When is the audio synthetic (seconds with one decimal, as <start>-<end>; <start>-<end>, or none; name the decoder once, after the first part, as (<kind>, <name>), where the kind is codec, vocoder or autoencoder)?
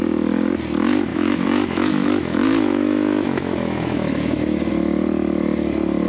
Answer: 1.1-4.7 (autoencoder, DAC-VAE)